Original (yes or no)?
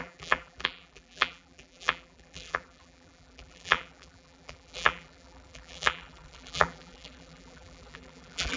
no